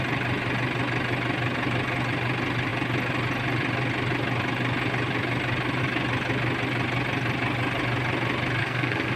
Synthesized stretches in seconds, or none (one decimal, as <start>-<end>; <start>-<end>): 8.6-9.2